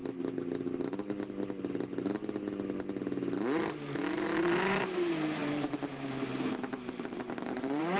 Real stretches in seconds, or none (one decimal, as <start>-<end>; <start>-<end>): 0.0-4.1